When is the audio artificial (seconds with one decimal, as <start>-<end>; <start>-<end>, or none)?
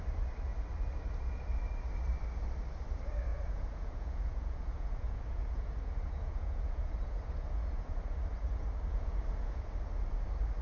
3.3-8.2; 8.9-9.6